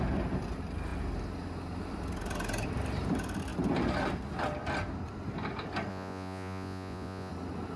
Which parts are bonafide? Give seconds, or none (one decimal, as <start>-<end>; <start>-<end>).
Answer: 0.0-5.9; 7.3-7.8